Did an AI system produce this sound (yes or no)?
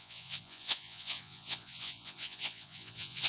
yes